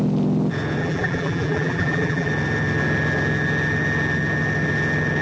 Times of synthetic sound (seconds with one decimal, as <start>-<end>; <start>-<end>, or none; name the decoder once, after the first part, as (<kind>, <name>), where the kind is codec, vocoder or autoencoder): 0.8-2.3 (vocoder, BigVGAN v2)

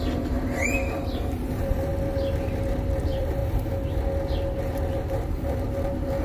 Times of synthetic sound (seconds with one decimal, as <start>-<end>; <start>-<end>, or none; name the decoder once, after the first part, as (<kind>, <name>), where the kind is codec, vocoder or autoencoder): 0.0-1.9 (vocoder, BigVGAN v2); 3.0-3.4; 4.6-6.2

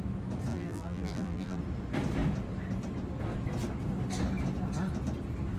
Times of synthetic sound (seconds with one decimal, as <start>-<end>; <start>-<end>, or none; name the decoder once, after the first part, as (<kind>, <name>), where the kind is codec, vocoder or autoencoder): 0.5-1.6 (vocoder, BigVGAN v2)

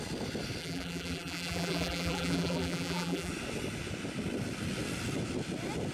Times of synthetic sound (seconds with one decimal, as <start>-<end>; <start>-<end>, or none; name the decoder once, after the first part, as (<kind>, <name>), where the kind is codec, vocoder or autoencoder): 0.6-3.3 (vocoder, BigVGAN v2)

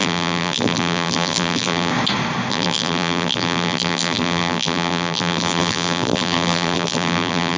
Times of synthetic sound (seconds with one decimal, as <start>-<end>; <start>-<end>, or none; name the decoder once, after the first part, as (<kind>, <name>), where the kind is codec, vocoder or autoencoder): 0.0-1.9 (vocoder, BigVGAN v2); 2.5-7.6

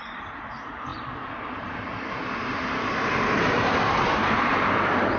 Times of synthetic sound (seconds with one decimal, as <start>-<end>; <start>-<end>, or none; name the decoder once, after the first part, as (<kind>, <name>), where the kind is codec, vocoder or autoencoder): 0.0-5.2 (vocoder, BigVGAN v2)

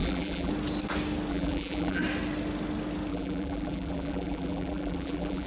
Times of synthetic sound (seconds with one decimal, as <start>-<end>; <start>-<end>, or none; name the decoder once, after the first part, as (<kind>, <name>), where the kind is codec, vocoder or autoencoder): 0.0-0.5 (vocoder, BigVGAN v2); 1.3-2.0; 3.1-5.5